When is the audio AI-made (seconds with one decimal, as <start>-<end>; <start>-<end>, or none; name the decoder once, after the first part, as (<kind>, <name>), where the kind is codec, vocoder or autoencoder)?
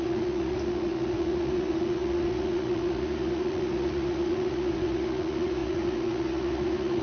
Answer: 0.0-7.0 (vocoder, Vocos)